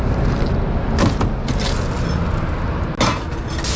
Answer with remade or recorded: recorded